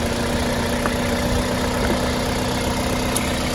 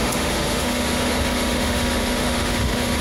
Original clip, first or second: first